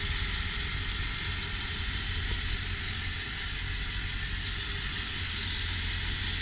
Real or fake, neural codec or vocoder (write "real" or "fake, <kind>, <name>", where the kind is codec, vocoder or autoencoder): real